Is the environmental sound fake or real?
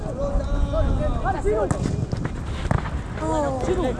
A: real